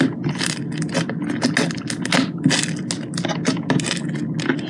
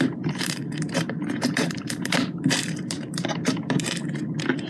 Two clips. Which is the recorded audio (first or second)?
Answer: first